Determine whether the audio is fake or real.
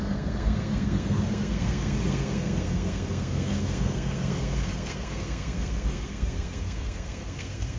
fake